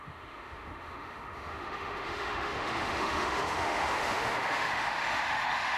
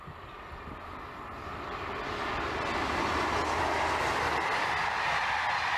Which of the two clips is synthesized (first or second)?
first